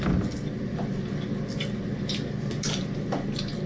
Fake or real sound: real